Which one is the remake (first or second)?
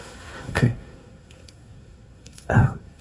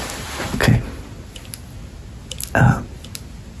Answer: first